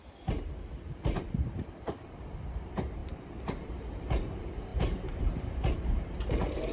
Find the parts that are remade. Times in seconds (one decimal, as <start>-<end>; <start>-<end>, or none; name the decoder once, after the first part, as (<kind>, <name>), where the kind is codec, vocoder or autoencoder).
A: 0.0-6.7 (vocoder, BigVGAN v2)